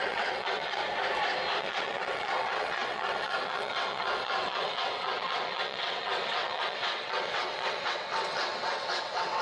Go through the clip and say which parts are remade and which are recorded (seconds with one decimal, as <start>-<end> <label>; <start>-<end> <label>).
0.0-0.8 remade; 0.8-1.6 recorded; 1.6-9.4 remade